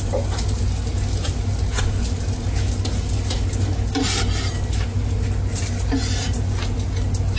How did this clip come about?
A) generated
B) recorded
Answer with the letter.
B